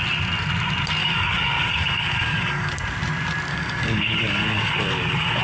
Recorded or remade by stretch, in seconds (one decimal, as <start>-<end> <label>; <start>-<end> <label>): 0.0-1.0 recorded; 1.0-2.7 remade; 2.7-3.5 recorded; 3.5-5.4 remade